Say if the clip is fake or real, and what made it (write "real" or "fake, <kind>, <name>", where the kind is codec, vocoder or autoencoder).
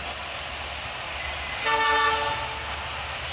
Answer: real